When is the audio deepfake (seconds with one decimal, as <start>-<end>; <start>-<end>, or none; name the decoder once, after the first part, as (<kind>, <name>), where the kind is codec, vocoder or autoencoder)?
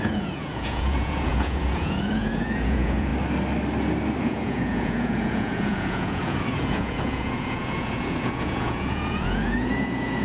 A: 0.0-3.1 (vocoder, Vocos); 4.2-10.2